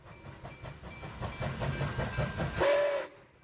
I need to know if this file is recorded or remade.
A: recorded